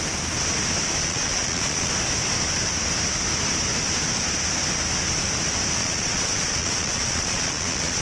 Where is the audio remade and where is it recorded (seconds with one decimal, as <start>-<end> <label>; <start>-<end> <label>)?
0.0-1.0 recorded; 1.0-1.9 remade; 1.9-5.8 recorded; 5.8-8.0 remade